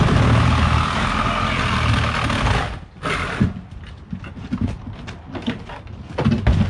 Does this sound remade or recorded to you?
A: recorded